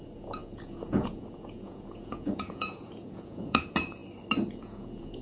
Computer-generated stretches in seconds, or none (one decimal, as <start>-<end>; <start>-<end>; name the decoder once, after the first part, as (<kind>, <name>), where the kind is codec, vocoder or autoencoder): 0.0-4.0 (vocoder, Vocos); 4.5-5.2